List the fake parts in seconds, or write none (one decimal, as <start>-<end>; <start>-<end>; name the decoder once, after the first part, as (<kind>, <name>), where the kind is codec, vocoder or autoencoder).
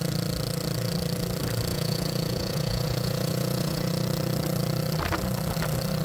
1.7-3.9 (vocoder, Vocos)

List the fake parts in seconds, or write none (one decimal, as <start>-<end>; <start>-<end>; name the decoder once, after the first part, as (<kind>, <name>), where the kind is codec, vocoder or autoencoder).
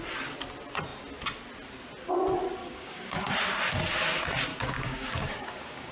2.6-3.3 (codec, DAC); 4.5-5.9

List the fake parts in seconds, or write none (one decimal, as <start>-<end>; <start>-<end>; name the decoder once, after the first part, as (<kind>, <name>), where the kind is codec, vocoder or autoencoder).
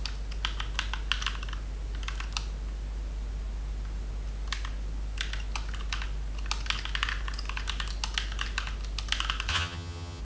9.5-10.2 (vocoder, HiFi-GAN)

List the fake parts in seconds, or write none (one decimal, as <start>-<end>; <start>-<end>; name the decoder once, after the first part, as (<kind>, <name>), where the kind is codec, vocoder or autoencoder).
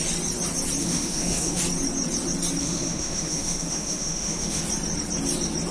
0.8-1.6 (autoencoder, DAC-VAE); 2.6-4.6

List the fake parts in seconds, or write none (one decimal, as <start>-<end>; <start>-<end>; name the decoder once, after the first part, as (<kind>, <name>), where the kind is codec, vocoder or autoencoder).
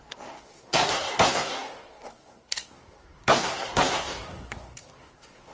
0.0-5.5 (codec, SNAC)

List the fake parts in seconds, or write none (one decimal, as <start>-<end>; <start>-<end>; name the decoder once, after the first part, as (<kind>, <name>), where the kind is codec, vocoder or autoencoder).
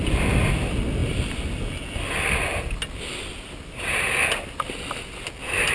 none